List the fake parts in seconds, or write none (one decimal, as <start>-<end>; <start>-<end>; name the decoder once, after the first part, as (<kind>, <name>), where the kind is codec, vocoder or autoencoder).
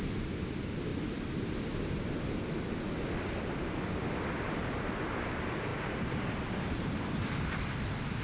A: none